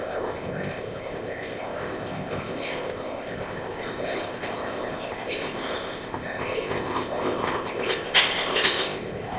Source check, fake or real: fake